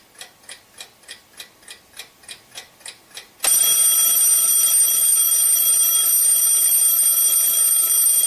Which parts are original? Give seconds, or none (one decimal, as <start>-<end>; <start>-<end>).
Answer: 0.0-8.3